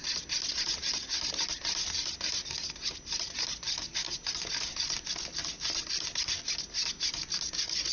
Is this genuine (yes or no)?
yes